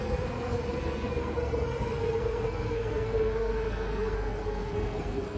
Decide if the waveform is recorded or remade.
remade